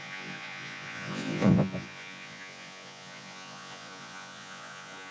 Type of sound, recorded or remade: remade